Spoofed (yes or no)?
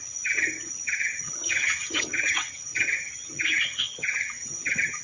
yes